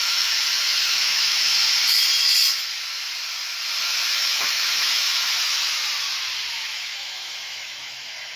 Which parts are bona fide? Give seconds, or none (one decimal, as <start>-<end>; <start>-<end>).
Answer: 1.5-3.8; 5.8-6.5